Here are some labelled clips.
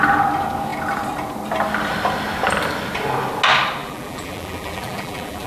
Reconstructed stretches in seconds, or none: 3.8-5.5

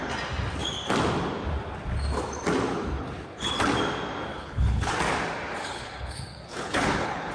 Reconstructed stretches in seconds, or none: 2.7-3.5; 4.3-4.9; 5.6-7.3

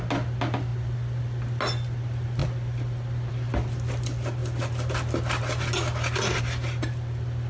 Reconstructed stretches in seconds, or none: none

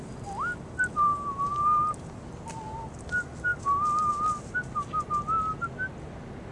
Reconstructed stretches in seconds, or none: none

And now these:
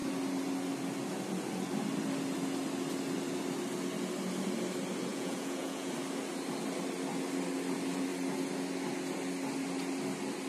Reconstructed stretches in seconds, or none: 5.1-5.9

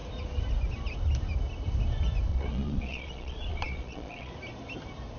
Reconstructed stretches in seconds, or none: 2.3-4.3

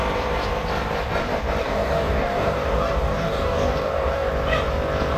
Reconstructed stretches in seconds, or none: 1.6-4.3